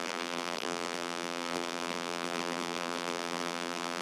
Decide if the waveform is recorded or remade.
remade